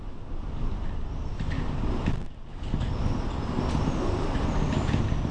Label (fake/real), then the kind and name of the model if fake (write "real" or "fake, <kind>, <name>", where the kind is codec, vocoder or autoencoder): real